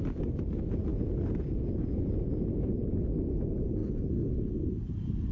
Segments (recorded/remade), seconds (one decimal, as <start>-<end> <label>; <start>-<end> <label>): 0.0-5.3 recorded